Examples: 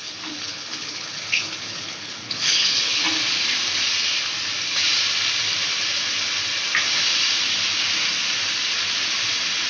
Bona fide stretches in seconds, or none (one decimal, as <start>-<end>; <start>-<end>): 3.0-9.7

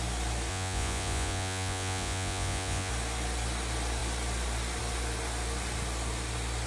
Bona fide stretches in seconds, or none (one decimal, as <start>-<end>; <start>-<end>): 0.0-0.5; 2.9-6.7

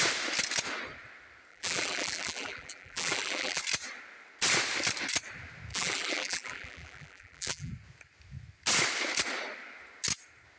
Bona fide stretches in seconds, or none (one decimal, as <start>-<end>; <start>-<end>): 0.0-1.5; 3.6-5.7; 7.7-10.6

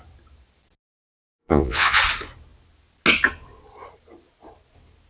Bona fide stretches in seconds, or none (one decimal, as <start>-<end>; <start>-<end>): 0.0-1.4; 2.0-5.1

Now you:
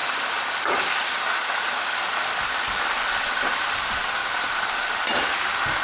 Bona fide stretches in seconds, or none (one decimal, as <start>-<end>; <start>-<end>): 0.0-4.2; 5.0-5.8

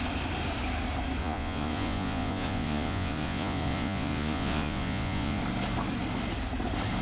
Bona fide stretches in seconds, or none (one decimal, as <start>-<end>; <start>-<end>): 0.0-1.2; 5.4-7.0